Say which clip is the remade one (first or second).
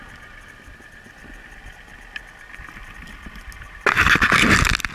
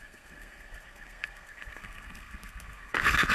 second